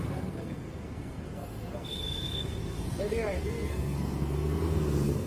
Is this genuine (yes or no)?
no